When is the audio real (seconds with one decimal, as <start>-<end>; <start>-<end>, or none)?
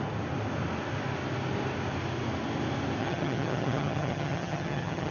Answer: 0.0-3.0